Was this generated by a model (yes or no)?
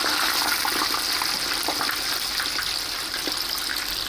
no